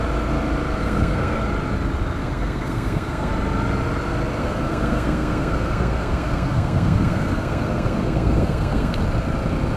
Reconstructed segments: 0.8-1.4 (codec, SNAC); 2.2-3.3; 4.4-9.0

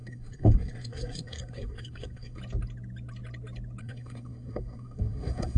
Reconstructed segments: 0.0-2.4 (codec, SNAC); 3.8-5.6

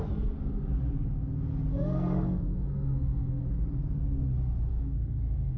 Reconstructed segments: 1.7-3.4 (codec, SNAC); 4.7-5.6

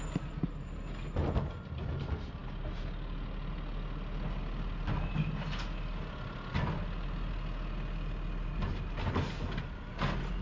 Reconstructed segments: none

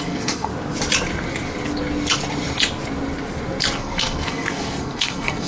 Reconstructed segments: 0.0-0.5 (codec, SNAC); 3.8-5.5

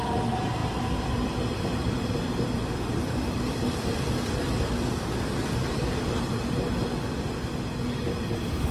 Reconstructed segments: 1.7-4.7 (vocoder, BigVGAN v2)

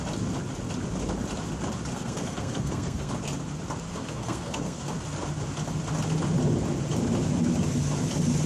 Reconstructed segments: 1.9-3.1 (codec, SNAC); 3.9-4.9